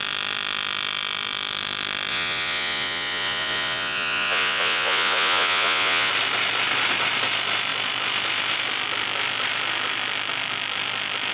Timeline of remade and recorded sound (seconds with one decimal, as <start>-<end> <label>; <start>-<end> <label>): 0.0-2.1 recorded; 2.1-6.1 remade; 6.1-11.3 recorded